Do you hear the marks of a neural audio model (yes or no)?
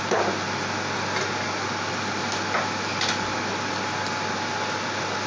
no